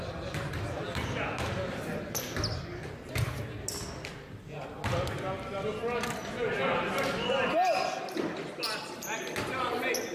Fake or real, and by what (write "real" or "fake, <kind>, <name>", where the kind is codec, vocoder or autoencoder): real